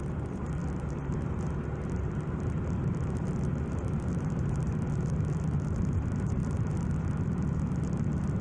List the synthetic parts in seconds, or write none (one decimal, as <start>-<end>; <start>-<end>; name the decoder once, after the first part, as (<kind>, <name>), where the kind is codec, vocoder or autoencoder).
0.0-8.4 (vocoder, BigVGAN v2)